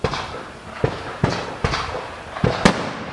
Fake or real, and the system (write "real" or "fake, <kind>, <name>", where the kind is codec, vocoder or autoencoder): real